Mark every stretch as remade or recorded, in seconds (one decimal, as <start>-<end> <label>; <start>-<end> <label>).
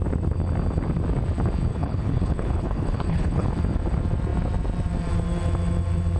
0.0-1.7 recorded; 1.7-3.5 remade; 3.5-6.2 recorded